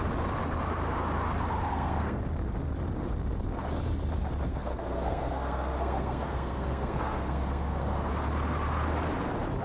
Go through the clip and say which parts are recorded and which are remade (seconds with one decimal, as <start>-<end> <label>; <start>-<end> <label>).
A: 0.0-1.7 recorded; 1.7-2.2 remade; 2.2-4.5 recorded; 4.5-8.1 remade; 8.1-9.6 recorded